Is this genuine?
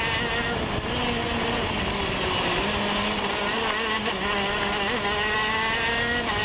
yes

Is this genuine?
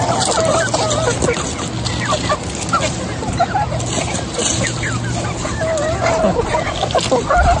yes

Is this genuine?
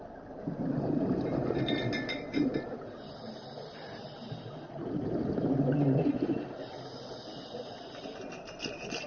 yes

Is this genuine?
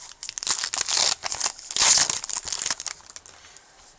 yes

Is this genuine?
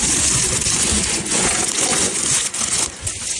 no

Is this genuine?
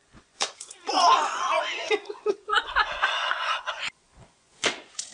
no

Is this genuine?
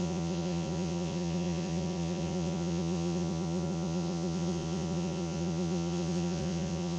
no